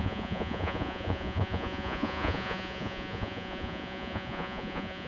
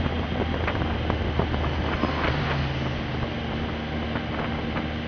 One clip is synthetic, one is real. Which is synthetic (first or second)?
first